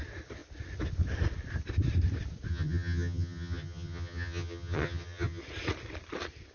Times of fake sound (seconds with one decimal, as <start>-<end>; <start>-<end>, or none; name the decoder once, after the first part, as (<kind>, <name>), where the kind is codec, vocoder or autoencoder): 2.5-5.4 (vocoder, HiFi-GAN)